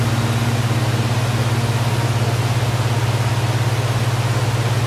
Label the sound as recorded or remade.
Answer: recorded